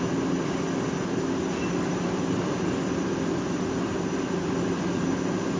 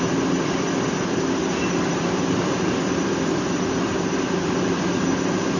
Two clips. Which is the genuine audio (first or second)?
first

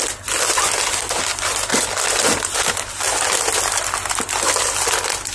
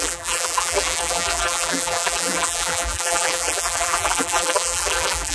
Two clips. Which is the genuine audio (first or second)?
first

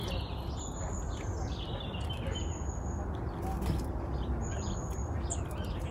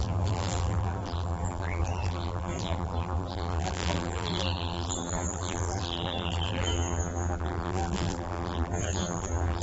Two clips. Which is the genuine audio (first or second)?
first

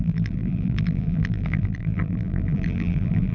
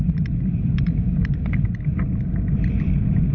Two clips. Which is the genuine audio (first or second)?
second